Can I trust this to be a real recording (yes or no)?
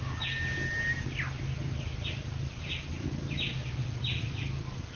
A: yes